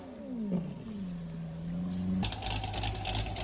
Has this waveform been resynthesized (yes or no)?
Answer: no